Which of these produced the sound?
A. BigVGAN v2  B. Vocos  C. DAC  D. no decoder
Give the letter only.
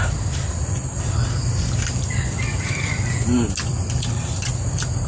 A